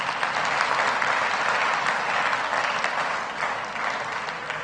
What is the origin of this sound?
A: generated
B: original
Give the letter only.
B